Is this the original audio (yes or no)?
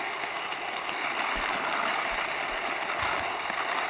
yes